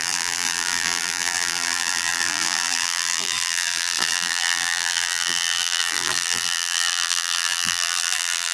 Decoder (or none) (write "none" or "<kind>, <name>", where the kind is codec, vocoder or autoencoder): vocoder, BigVGAN v2